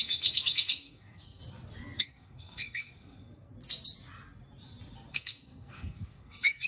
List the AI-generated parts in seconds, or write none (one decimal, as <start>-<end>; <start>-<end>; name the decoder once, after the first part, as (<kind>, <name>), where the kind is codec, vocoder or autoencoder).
0.0-1.4 (codec, SNAC); 2.0-3.5; 5.1-6.7